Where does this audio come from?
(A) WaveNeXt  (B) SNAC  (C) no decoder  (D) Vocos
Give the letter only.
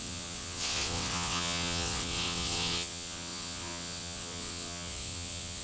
A